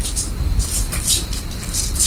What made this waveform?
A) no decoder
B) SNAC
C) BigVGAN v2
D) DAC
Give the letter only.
A